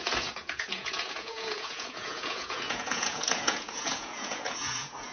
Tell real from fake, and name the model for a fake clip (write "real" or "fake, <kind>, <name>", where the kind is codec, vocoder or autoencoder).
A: fake, vocoder, Vocos